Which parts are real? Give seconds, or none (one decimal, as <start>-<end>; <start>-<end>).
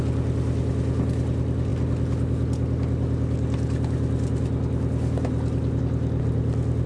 0.0-6.9